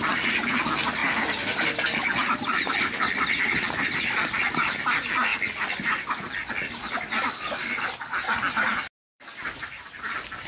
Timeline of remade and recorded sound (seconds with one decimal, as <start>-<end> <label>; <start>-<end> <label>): 0.0-10.5 recorded